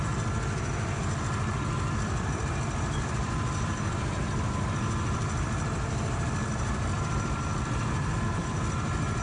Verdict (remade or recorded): remade